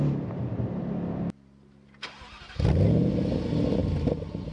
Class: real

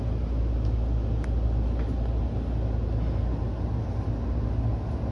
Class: real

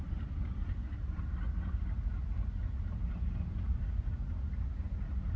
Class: real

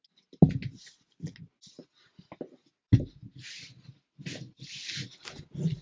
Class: real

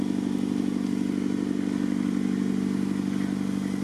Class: real